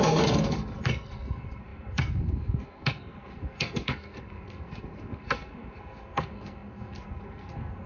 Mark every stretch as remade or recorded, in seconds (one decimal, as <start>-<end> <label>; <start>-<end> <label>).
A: 0.0-7.9 remade